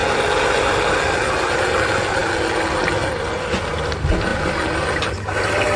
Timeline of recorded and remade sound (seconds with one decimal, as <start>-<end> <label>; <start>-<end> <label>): 0.0-5.8 recorded